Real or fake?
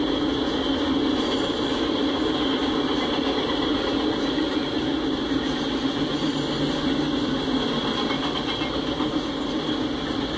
real